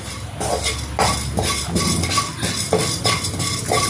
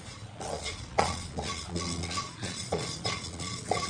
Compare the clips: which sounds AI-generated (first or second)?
second